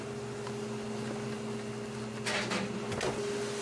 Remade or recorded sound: recorded